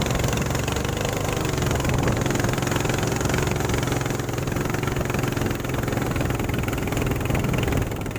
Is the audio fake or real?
real